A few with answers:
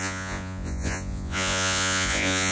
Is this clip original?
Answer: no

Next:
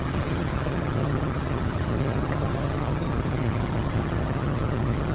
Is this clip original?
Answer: no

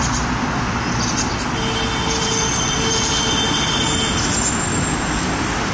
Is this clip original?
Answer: yes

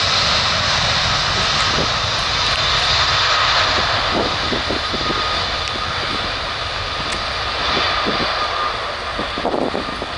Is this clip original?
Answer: yes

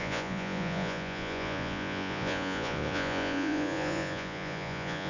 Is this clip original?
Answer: no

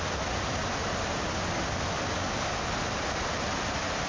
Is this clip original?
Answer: yes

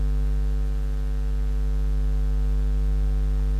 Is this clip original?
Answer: yes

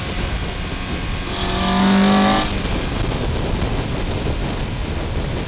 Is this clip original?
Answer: yes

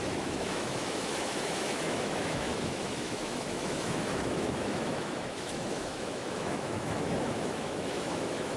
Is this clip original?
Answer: no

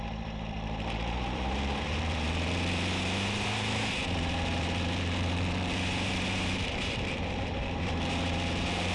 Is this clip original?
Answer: no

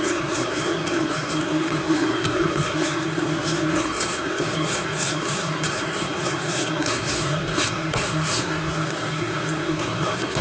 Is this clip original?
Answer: no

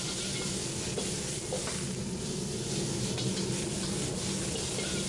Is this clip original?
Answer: yes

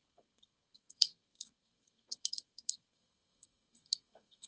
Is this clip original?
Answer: no